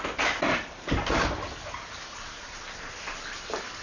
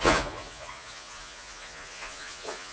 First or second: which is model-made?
second